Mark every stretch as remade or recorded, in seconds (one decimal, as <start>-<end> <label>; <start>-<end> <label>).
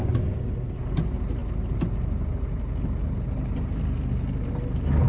0.0-5.1 recorded